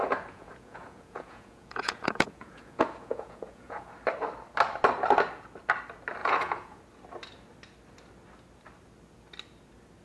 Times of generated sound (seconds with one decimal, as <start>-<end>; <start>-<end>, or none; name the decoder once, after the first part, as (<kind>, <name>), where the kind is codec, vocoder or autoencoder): 0.0-3.9 (vocoder, Vocos); 6.2-6.8